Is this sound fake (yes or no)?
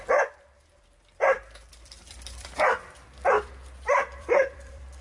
yes